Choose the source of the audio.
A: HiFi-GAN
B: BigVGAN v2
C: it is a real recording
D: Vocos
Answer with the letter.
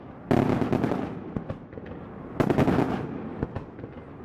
C